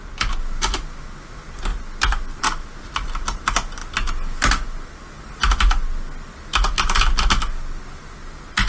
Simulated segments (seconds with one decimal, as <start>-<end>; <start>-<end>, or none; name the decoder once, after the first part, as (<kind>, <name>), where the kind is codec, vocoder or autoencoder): none